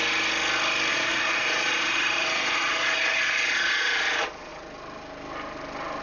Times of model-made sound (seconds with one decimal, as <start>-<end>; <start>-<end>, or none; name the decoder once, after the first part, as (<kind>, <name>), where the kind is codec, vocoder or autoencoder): 0.9-4.5 (vocoder, Vocos)